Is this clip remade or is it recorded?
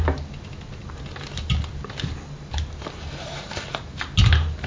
recorded